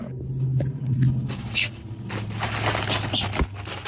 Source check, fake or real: real